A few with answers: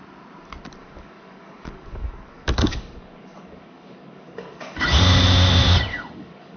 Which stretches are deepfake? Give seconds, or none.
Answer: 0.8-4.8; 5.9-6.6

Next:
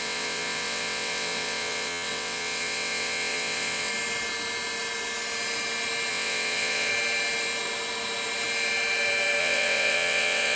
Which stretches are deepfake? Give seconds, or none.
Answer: 0.0-3.9; 6.1-6.9; 9.4-10.6

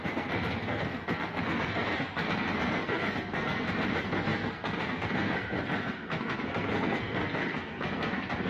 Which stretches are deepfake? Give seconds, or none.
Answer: 0.0-8.5